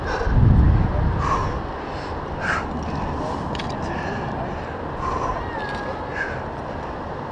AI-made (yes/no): no